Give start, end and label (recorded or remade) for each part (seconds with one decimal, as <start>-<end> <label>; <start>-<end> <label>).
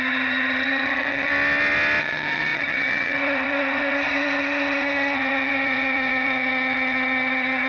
0.0-1.3 remade; 1.3-2.0 recorded; 2.0-7.7 remade